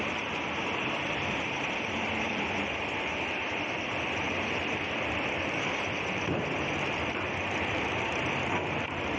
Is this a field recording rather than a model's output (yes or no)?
no